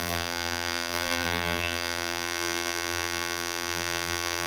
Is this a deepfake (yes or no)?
yes